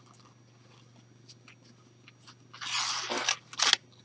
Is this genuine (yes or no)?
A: yes